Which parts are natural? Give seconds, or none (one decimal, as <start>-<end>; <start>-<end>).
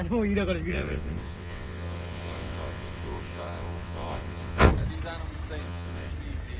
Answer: 0.0-0.7; 4.7-5.6; 6.1-6.6